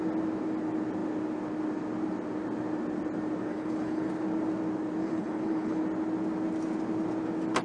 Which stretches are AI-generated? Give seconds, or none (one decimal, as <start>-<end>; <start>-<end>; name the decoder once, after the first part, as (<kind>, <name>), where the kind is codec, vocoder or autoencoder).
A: 3.5-4.1 (codec, HILCodec); 5.0-5.8